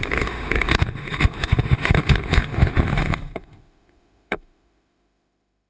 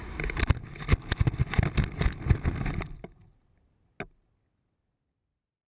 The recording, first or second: second